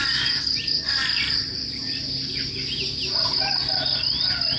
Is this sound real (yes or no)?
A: yes